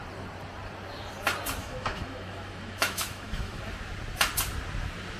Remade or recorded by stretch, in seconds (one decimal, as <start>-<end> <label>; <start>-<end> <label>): 0.0-1.6 recorded; 1.6-3.6 remade; 3.6-5.2 recorded